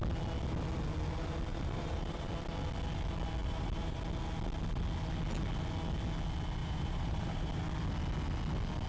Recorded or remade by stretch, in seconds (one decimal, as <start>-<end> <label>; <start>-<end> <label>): 0.0-1.5 recorded; 1.5-2.3 remade; 2.3-3.4 recorded; 3.4-4.0 remade; 4.0-6.6 recorded; 6.6-7.6 remade; 7.6-8.9 recorded